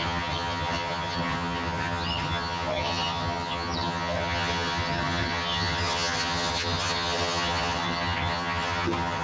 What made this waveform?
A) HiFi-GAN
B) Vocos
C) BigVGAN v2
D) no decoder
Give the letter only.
A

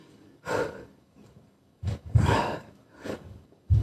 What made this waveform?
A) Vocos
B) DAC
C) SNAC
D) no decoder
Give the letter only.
B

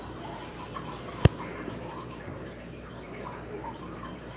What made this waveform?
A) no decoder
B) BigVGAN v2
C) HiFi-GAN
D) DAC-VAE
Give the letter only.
B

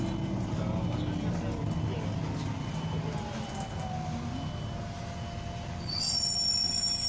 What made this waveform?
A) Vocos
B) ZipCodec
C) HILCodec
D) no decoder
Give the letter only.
D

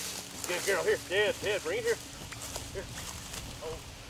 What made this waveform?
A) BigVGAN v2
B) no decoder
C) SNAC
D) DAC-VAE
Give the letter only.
B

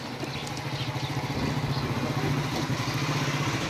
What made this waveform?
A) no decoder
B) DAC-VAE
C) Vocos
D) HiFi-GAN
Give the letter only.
A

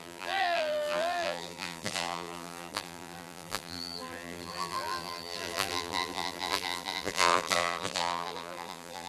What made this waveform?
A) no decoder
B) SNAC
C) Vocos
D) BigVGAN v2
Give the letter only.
D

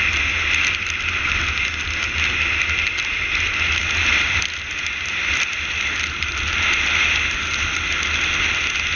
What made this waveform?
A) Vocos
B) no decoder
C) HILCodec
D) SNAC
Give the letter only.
B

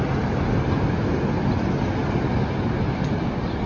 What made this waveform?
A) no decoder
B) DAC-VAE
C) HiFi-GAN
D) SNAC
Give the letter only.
A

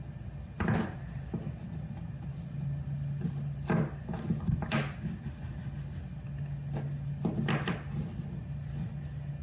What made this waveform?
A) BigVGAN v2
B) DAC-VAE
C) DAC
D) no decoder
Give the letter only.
D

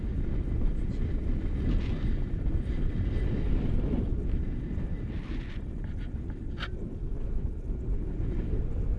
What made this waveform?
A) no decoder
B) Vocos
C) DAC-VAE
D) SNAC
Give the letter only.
A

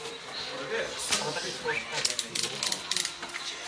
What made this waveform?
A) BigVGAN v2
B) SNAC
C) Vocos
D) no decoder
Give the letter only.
D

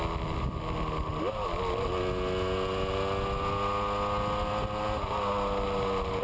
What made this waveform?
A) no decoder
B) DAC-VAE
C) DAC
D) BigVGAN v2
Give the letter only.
A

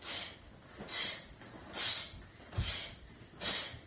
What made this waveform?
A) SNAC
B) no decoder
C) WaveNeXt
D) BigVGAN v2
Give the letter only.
B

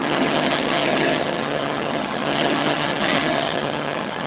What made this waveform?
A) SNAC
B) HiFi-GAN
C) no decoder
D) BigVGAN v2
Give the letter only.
B